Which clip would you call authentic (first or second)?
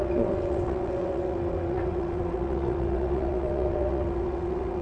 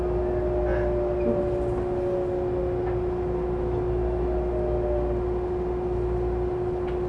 second